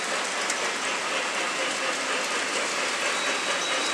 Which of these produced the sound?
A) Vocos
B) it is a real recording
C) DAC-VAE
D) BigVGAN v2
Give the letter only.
B